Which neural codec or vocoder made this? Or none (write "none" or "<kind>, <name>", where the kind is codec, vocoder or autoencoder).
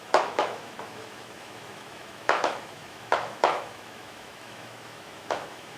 autoencoder, DAC-VAE